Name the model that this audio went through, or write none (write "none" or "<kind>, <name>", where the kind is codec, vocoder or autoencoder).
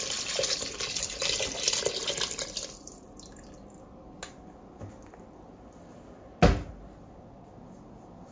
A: none